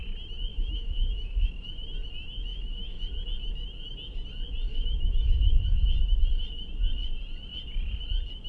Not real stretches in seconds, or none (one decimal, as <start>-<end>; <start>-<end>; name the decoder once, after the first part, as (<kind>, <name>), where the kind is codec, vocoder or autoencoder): 0.5-1.5 (autoencoder, DAC-VAE); 2.5-3.0; 4.7-5.8